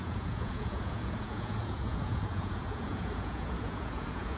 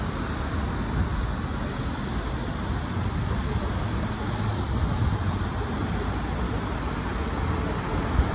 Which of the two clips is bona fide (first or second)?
second